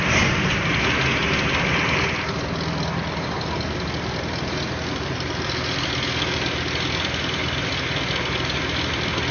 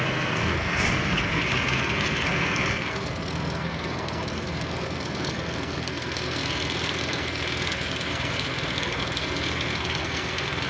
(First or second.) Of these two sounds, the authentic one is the first